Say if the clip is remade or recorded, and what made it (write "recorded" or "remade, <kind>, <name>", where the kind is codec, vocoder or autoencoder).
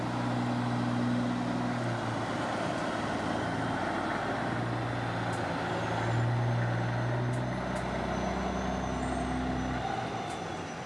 recorded